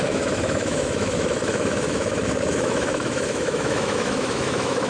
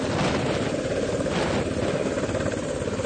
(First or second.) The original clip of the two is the second